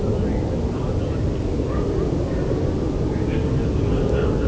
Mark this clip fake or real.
real